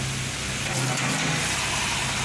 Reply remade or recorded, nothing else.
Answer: recorded